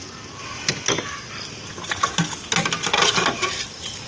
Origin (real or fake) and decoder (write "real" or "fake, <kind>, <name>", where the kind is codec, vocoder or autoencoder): real